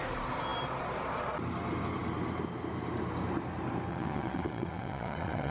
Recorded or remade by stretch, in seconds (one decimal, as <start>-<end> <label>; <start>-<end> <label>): 0.0-3.9 recorded; 3.9-5.5 remade